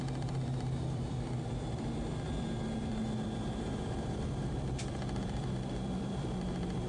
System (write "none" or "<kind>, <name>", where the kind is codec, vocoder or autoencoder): vocoder, BigVGAN v2